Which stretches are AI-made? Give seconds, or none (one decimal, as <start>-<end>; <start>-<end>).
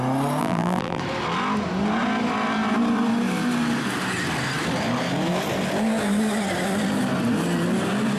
0.4-1.0